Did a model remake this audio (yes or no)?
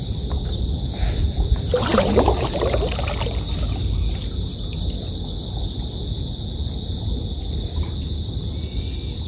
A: no